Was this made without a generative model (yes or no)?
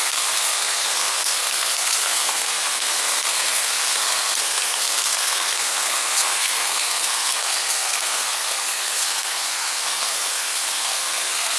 no